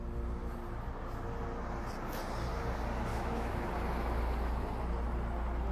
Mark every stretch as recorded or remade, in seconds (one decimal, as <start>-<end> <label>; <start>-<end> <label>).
0.0-3.1 recorded; 3.1-3.7 remade; 3.7-5.7 recorded